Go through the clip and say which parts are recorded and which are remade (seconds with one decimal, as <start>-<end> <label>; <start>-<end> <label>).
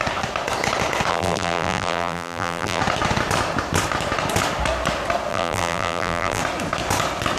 0.0-1.1 recorded; 1.1-2.8 remade; 2.8-5.3 recorded; 5.3-6.4 remade; 6.4-7.4 recorded